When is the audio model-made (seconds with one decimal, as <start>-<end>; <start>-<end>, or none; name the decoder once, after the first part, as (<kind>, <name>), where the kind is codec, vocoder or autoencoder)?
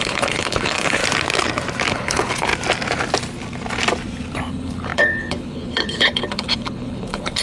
0.0-1.0 (codec, HILCodec); 1.9-2.5; 4.5-7.4